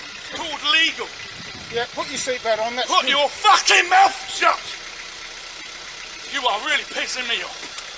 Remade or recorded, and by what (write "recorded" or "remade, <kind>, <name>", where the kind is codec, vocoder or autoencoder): recorded